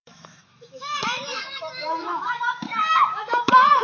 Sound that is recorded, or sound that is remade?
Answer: remade